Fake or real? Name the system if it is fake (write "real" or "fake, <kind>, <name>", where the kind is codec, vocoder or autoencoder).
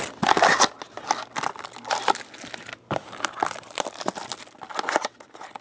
real